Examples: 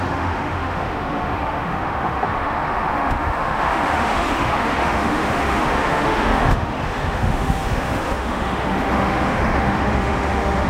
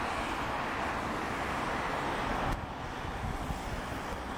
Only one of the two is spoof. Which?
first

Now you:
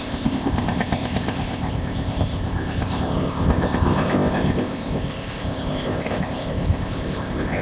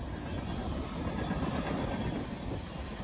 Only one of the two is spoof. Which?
first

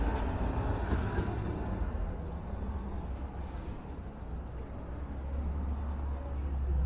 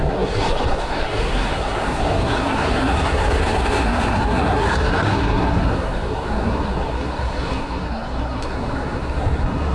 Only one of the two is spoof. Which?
second